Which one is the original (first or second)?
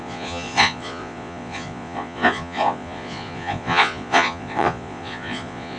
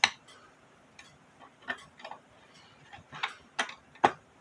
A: second